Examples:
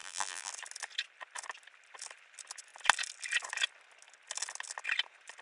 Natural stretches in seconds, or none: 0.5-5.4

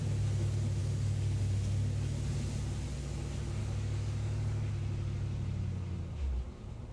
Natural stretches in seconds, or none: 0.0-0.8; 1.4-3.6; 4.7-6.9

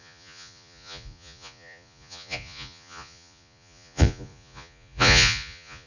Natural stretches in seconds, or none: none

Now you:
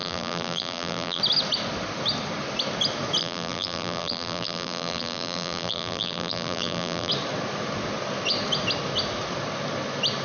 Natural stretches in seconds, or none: 1.2-3.2; 7.1-10.2

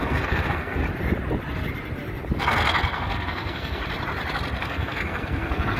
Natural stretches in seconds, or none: 0.8-2.4; 3.8-4.6